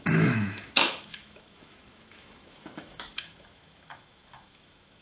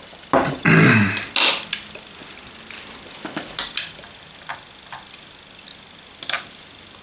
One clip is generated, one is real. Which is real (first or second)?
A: second